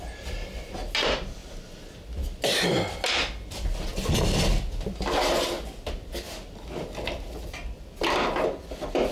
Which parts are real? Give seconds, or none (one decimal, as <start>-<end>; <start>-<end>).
0.0-9.1